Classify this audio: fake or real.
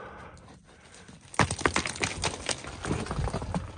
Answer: real